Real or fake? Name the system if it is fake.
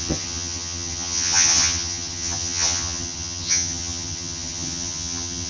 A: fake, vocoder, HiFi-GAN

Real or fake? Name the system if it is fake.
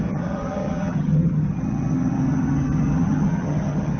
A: fake, vocoder, HiFi-GAN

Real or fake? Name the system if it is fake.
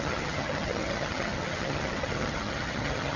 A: fake, vocoder, HiFi-GAN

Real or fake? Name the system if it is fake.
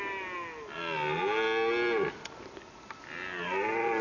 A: real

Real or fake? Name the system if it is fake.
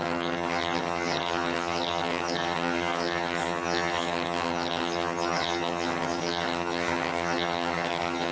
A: fake, vocoder, HiFi-GAN